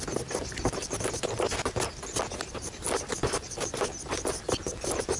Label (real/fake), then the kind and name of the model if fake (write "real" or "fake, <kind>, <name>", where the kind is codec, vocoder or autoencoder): real